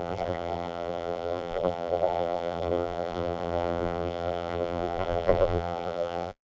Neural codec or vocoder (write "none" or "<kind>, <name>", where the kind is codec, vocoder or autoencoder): vocoder, BigVGAN v2